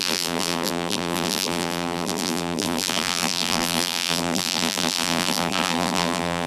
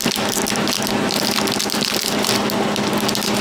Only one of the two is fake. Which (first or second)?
first